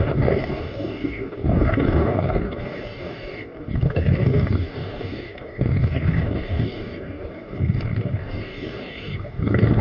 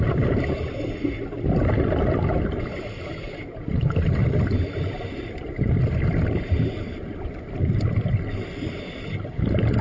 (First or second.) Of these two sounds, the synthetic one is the first